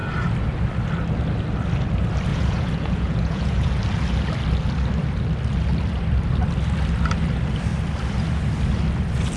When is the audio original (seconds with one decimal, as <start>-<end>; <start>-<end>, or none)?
0.0-2.3; 3.7-9.4